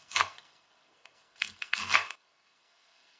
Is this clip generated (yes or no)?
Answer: yes